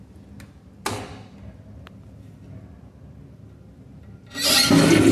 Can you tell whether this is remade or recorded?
recorded